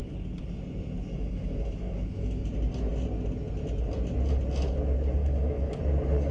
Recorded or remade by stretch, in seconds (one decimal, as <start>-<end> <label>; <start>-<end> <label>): 0.0-1.1 recorded; 1.1-2.4 remade; 2.4-5.2 recorded; 5.2-5.8 remade; 5.8-6.3 recorded